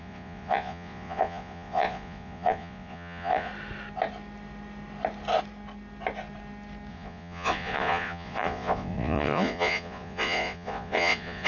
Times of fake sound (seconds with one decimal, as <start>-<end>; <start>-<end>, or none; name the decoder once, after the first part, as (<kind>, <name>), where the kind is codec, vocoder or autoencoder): 0.0-3.5 (vocoder, Vocos); 6.9-11.5